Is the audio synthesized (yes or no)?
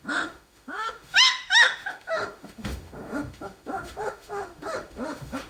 yes